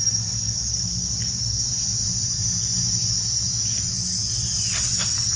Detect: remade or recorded recorded